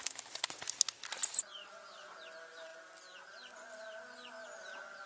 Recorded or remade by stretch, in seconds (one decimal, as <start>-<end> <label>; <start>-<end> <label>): 0.0-5.1 recorded